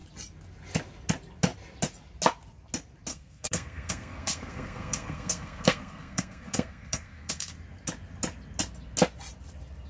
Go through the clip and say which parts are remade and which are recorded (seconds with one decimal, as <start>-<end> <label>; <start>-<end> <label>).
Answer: 0.0-3.1 recorded; 3.1-7.5 remade; 7.5-9.9 recorded